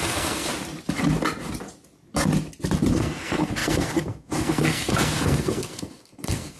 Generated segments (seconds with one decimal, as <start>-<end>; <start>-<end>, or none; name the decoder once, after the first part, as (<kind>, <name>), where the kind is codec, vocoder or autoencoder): 0.0-0.5 (codec, SNAC); 2.9-6.6

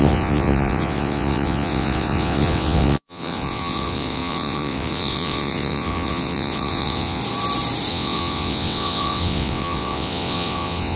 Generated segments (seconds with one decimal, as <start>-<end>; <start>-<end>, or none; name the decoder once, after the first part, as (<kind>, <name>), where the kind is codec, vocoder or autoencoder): 0.0-7.2 (vocoder, WaveNeXt); 7.9-11.0